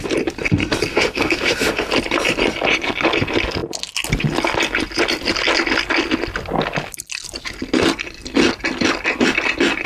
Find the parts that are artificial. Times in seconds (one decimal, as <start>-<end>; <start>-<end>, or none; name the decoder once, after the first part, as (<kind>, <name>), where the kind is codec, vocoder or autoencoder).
0.9-1.9 (autoencoder, DAC-VAE)